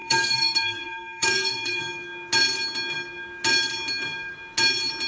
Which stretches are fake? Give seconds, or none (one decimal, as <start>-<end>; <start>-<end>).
0.0-1.8